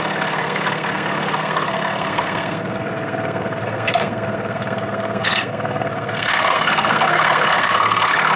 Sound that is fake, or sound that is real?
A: fake